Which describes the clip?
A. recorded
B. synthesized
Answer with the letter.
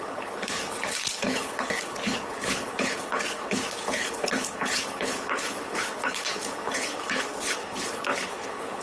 B